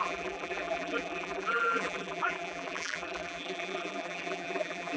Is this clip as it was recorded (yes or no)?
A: no